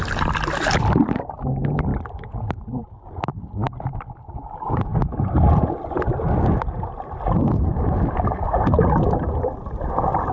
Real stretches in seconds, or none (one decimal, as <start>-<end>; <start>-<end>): 0.0-10.3